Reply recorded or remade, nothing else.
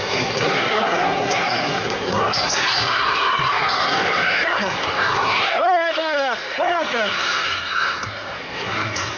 remade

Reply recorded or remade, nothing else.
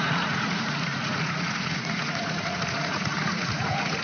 remade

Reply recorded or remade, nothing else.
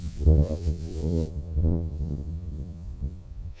remade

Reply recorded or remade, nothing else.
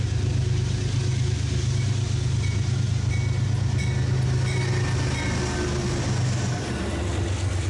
recorded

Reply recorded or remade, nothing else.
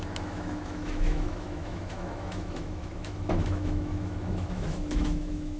remade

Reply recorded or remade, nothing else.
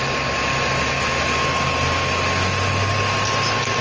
recorded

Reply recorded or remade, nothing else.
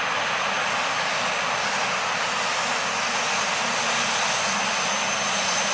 recorded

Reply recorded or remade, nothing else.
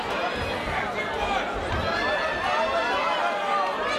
recorded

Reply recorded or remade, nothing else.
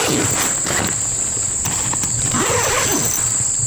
remade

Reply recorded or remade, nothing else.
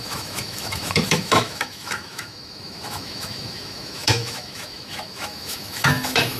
remade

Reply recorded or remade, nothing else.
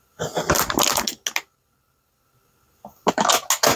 recorded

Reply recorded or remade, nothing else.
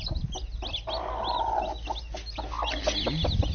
recorded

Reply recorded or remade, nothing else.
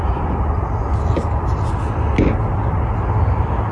recorded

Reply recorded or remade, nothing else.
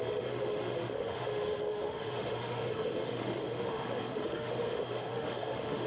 remade